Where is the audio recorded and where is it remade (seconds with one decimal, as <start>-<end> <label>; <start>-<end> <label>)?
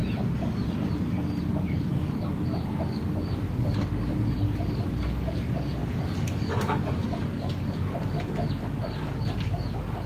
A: 0.0-1.5 recorded; 1.5-10.1 remade